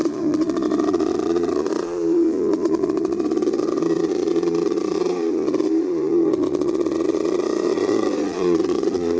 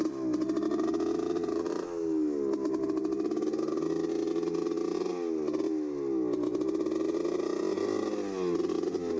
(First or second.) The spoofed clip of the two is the first